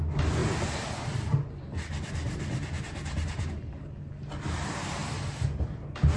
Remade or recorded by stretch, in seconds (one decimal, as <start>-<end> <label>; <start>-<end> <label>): 0.0-6.2 recorded